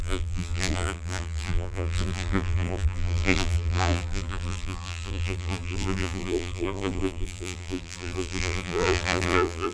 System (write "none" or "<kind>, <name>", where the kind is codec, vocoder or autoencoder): vocoder, BigVGAN v2